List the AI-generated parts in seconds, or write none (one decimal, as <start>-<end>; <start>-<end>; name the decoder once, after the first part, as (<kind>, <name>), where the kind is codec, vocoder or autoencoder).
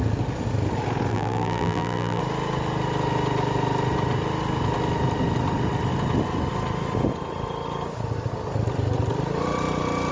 1.1-2.2 (vocoder, BigVGAN v2)